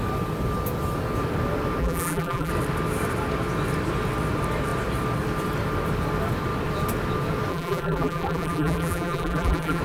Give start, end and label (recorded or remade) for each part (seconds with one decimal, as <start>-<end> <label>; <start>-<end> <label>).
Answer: 0.0-1.8 recorded; 1.8-2.5 remade; 2.5-7.5 recorded; 7.5-9.8 remade